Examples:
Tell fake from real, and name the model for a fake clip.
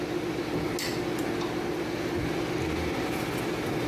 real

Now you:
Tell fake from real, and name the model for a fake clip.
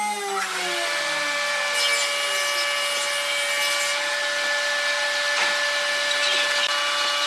real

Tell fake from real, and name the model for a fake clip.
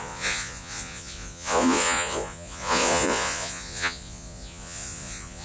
fake, vocoder, Vocos